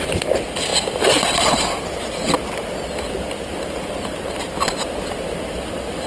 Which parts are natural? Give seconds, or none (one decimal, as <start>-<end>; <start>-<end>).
0.0-6.1